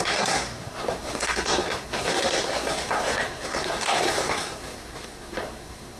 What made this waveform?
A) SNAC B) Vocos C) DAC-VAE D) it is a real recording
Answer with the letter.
A